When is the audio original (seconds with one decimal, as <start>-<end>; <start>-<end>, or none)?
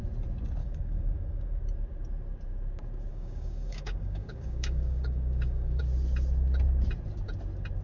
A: 0.0-0.6; 1.6-3.1; 5.8-7.8